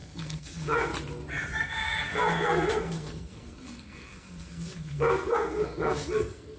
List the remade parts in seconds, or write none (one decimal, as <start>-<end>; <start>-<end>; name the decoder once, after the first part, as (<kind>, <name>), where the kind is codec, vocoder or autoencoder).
0.0-0.9 (codec, SNAC); 1.6-6.6